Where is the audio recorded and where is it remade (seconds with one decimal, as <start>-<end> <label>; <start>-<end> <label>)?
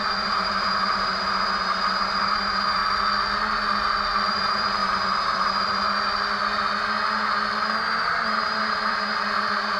0.0-1.1 remade; 1.1-2.2 recorded; 2.2-2.8 remade; 2.8-4.3 recorded; 4.3-4.8 remade; 4.8-8.0 recorded; 8.0-9.8 remade